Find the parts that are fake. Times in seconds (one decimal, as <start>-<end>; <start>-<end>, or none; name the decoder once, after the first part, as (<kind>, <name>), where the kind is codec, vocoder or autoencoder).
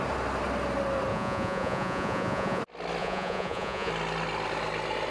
1.1-2.6 (vocoder, Vocos); 3.0-3.9